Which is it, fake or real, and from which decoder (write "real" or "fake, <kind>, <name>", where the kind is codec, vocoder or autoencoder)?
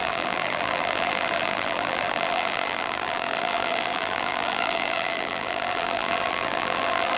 fake, vocoder, BigVGAN v2